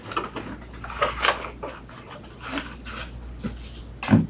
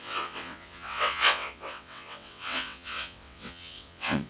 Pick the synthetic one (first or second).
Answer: second